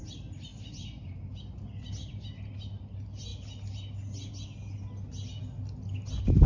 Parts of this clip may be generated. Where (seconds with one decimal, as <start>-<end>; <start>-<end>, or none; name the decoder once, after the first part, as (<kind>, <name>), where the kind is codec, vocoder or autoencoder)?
none